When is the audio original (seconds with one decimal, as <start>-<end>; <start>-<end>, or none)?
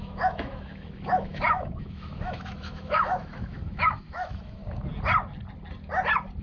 4.6-6.4